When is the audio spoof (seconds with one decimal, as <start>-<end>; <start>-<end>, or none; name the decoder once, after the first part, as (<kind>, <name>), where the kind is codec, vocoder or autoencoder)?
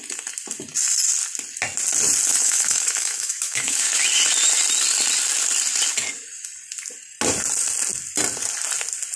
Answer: 2.3-4.0 (autoencoder, DAC-VAE)